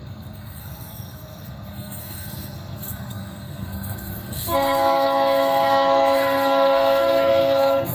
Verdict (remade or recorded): remade